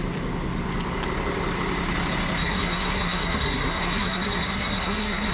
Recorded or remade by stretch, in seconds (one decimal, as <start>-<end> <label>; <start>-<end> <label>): 0.0-2.4 recorded; 2.4-5.3 remade